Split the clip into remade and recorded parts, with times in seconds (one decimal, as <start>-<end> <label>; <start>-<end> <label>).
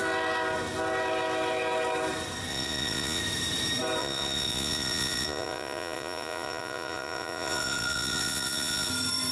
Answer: 0.0-2.5 recorded; 2.5-3.2 remade; 3.2-4.0 recorded; 4.0-8.9 remade; 8.9-9.3 recorded